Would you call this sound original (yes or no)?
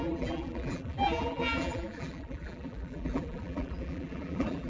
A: no